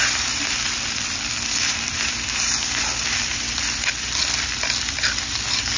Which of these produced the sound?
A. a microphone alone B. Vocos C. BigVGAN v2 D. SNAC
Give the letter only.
C